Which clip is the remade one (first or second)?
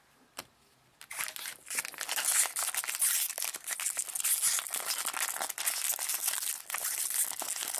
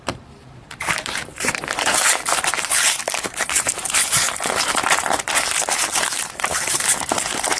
second